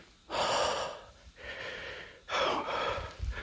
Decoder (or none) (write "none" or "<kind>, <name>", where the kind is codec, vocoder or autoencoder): none